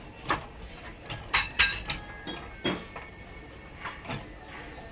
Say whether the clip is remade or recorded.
recorded